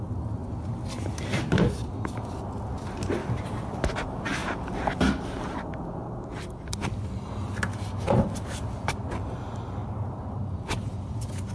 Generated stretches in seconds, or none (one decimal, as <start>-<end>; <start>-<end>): 3.2-3.9; 9.8-11.5